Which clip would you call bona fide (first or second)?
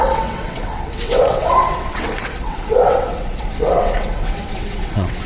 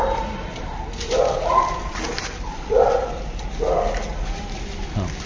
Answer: second